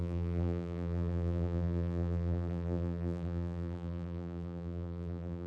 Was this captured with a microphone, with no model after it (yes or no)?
no